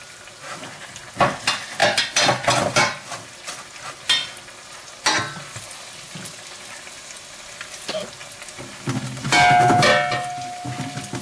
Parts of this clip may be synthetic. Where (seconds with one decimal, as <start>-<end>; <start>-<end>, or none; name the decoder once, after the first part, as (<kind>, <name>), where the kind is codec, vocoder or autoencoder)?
none